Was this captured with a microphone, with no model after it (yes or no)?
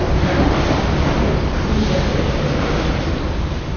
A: yes